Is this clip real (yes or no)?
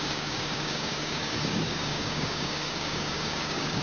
no